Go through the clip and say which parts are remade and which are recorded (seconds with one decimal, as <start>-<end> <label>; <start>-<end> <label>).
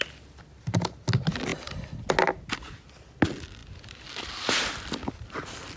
0.0-5.8 recorded